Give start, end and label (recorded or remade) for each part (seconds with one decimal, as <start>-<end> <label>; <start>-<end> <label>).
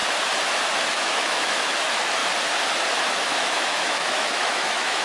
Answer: 0.0-0.9 recorded; 0.9-2.2 remade; 2.2-3.2 recorded; 3.2-5.0 remade